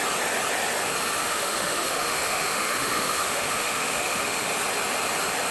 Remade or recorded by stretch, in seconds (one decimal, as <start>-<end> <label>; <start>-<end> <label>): 0.0-1.2 recorded; 1.2-4.5 remade; 4.5-5.5 recorded